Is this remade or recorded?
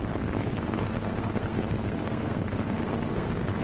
remade